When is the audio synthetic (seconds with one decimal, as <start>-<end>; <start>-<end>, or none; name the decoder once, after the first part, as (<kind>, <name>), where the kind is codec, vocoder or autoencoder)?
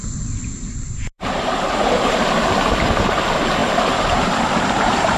0.0-2.9 (vocoder, BigVGAN v2); 3.6-5.2